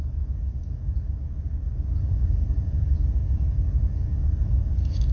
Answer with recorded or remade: recorded